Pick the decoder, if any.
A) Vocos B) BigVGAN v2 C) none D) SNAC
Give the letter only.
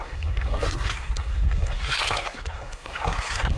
D